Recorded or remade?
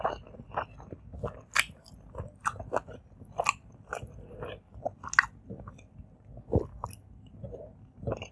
recorded